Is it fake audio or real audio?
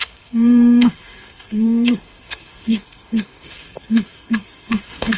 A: fake